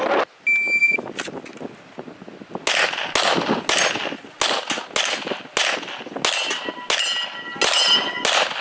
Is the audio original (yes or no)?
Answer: yes